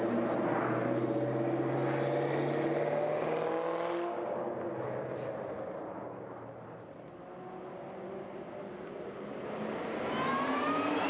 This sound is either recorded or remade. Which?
recorded